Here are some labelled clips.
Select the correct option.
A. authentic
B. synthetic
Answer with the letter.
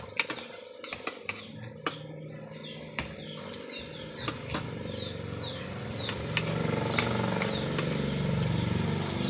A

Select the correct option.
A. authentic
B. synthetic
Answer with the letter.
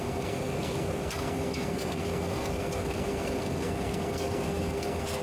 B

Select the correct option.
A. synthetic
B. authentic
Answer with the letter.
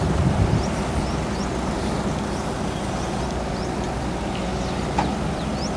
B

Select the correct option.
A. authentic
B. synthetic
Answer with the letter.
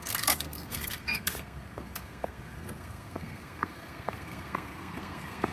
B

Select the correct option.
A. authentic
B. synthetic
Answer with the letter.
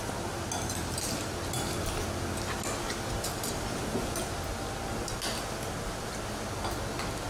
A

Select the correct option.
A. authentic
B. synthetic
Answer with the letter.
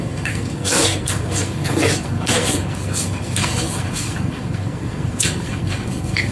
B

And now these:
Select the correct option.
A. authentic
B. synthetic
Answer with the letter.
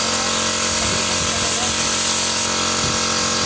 A